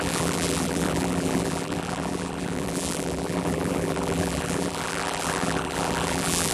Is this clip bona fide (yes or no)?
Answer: no